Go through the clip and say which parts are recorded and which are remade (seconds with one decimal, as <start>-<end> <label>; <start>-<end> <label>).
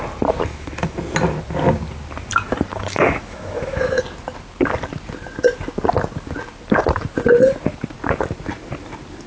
0.0-0.5 recorded; 0.5-1.0 remade; 1.0-2.7 recorded; 2.7-4.0 remade; 4.0-9.3 recorded